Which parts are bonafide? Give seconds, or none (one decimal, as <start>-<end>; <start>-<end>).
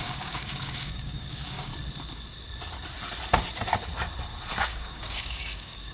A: 1.7-4.6